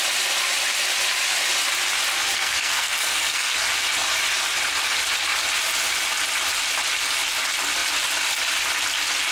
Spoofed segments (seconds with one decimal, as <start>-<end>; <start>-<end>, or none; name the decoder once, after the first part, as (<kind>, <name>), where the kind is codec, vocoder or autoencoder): 2.3-3.5 (codec, SNAC)